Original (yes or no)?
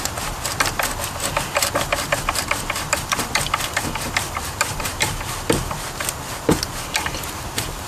no